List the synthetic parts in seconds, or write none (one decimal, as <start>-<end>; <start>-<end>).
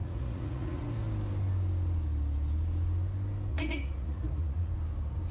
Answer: 0.0-0.8; 3.5-4.7